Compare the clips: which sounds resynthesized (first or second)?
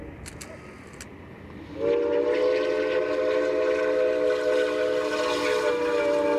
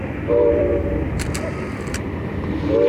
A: second